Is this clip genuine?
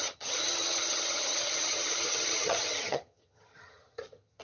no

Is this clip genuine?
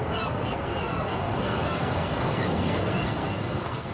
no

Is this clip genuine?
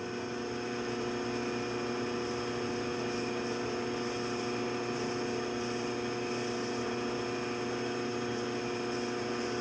yes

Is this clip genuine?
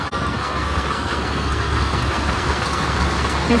no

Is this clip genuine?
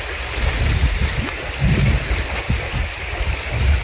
yes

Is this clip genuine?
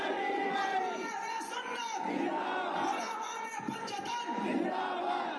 no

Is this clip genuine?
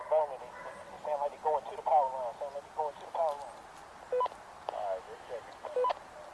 yes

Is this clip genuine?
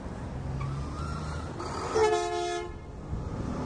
yes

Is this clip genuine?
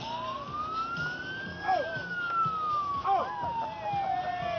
yes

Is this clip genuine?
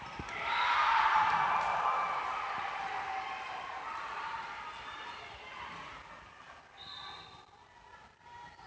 no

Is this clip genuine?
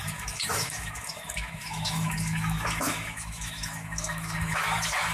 no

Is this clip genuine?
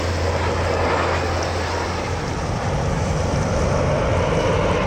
yes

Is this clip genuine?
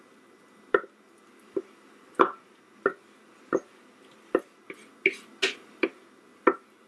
yes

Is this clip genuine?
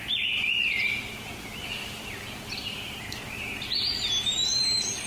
no